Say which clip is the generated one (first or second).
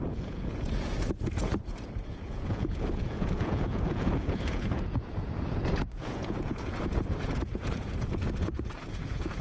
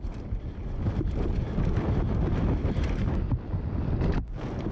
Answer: first